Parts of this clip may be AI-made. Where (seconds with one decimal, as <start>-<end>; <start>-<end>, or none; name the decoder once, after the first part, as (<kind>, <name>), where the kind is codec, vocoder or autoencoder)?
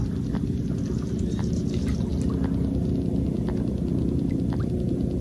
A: none